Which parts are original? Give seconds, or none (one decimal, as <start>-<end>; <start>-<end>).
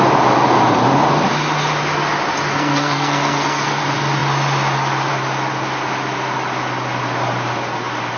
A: 0.0-2.5; 3.8-8.2